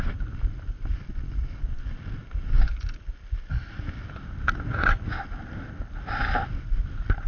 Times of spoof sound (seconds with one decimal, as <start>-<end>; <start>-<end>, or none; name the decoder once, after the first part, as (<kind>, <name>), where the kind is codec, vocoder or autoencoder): none